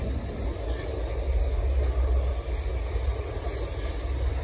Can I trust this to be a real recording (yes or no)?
yes